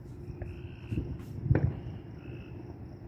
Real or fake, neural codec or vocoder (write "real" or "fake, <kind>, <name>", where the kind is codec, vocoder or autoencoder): real